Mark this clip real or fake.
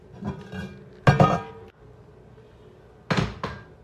real